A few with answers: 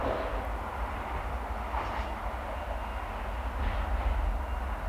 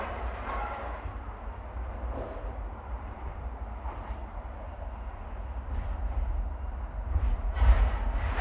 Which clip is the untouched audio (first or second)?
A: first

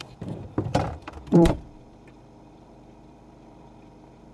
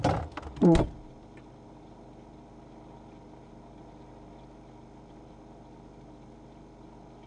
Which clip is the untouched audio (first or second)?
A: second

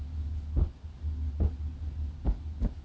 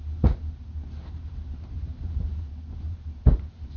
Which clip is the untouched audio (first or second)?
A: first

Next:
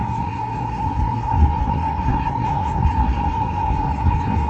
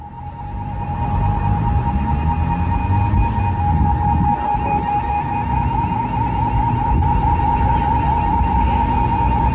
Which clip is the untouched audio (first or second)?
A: second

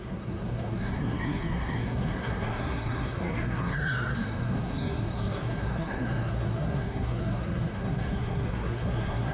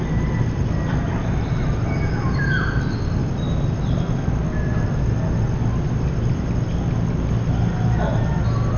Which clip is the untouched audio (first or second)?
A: second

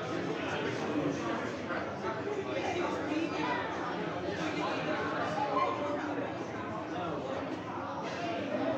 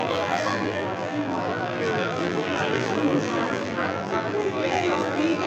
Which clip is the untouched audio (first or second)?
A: first